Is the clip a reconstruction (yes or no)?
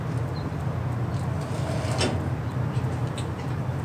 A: no